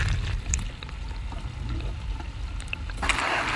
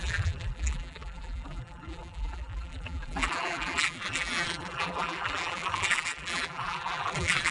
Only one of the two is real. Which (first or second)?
first